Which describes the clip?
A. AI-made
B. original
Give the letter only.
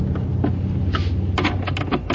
B